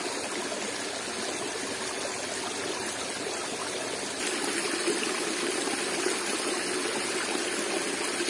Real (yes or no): yes